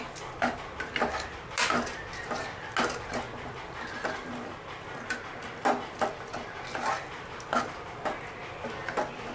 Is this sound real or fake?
real